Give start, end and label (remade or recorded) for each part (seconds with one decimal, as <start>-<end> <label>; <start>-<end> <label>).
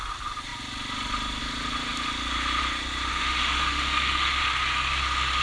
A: 0.0-3.1 recorded; 3.1-4.4 remade; 4.4-5.4 recorded